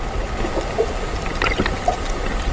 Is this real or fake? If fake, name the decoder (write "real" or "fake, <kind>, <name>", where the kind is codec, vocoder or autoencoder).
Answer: real